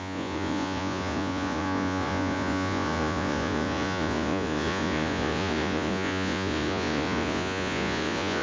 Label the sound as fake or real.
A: fake